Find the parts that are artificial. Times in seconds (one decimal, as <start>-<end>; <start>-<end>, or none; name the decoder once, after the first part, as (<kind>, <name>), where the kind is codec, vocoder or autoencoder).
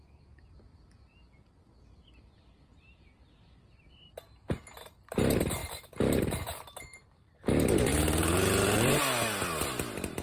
5.6-8.9 (vocoder, BigVGAN v2)